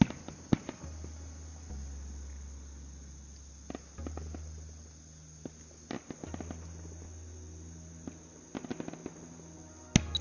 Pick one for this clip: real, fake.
real